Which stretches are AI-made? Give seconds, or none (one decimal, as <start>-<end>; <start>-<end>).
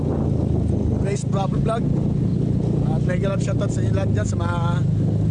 none